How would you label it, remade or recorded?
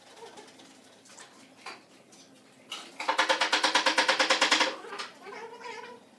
recorded